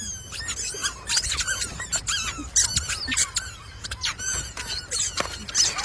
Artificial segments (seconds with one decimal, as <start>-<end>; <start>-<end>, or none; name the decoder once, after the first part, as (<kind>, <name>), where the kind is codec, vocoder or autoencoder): 3.7-4.8 (vocoder, Vocos)